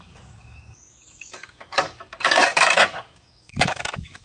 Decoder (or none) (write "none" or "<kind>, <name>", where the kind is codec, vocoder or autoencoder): codec, DAC